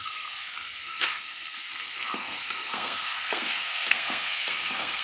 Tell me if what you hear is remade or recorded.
remade